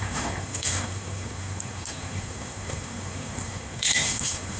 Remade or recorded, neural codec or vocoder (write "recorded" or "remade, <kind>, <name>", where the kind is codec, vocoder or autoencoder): remade, codec, SNAC